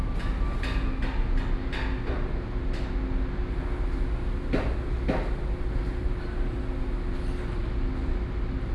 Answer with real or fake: real